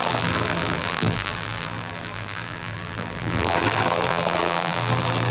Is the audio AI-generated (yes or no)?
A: yes